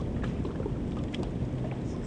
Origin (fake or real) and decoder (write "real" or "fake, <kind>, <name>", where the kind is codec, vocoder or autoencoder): real